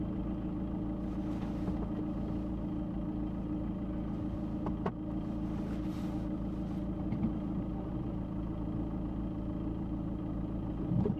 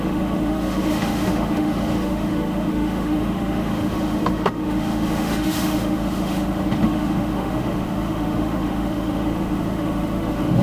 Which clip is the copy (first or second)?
second